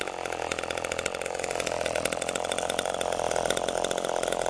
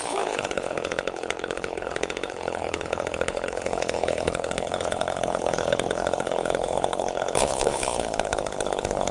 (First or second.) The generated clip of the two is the second